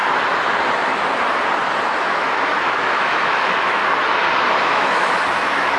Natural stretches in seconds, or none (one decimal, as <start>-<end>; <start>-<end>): 0.0-2.0; 3.8-4.6